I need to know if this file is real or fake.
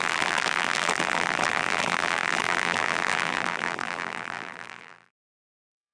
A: fake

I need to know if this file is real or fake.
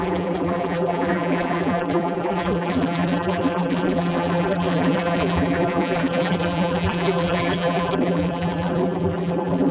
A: fake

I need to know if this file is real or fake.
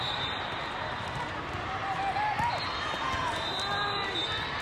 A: real